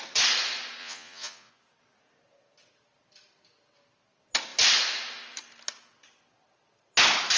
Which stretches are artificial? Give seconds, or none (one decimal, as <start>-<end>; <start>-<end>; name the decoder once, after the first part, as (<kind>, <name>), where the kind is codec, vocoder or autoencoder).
0.8-1.5 (vocoder, Vocos)